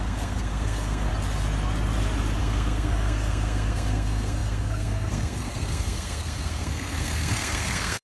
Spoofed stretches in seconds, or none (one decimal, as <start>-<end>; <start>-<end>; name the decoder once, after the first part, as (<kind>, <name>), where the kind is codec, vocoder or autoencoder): 0.0-1.1 (codec, SNAC); 2.4-8.0